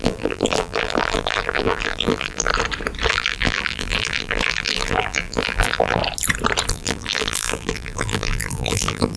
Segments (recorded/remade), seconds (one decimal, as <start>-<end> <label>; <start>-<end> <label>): 0.0-2.5 remade; 2.5-3.1 recorded; 3.1-6.0 remade; 6.0-6.7 recorded; 6.7-9.2 remade